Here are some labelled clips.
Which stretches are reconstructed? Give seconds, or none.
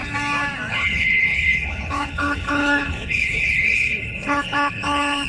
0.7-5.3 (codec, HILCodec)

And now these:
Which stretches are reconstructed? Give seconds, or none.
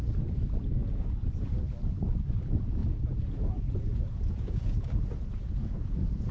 0.8-1.6 (vocoder, Vocos); 2.8-6.3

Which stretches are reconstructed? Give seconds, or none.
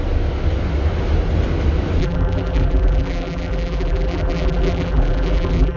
2.0-5.8 (vocoder, BigVGAN v2)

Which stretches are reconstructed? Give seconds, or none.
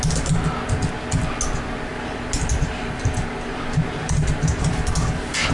1.9-4.7 (vocoder, BigVGAN v2)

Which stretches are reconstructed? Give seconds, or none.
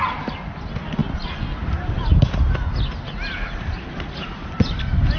none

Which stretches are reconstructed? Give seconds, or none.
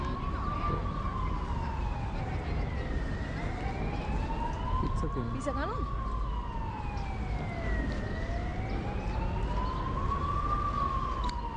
none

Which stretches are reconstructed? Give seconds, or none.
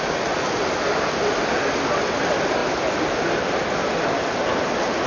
none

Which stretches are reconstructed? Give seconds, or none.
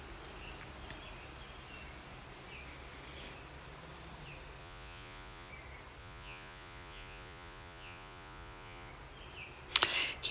4.6-5.5 (vocoder, Vocos); 6.0-8.9